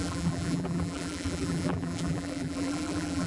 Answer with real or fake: fake